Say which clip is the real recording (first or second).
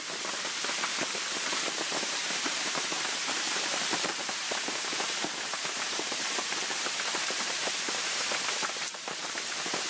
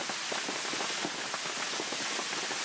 second